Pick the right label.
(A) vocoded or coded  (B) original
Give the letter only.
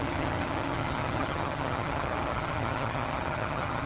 A